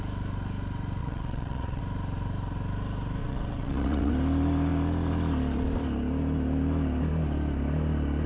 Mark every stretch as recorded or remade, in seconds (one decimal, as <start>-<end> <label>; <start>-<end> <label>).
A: 0.0-1.0 recorded; 1.0-1.8 remade; 1.8-3.2 recorded; 3.2-4.1 remade; 4.1-8.3 recorded